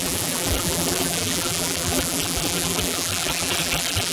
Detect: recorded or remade remade